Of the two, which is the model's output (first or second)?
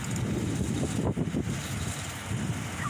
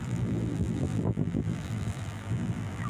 second